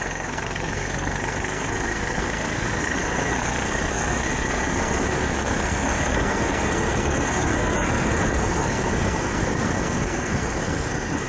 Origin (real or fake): fake